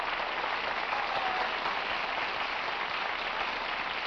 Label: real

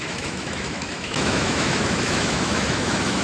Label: fake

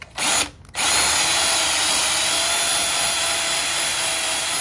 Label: real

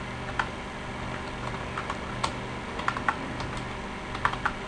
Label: real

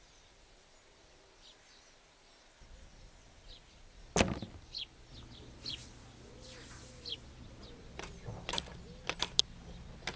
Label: real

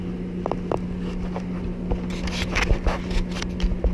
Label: real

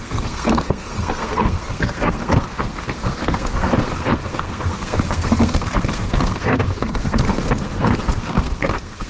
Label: fake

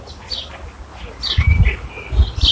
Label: real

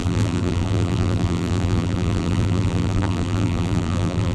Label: fake